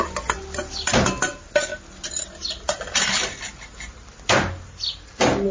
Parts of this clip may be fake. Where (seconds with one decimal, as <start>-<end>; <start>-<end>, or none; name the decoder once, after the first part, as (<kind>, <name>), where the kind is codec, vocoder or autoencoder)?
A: none